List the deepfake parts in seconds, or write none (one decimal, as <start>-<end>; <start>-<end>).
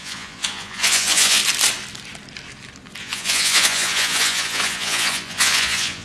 0.0-1.4; 3.0-6.0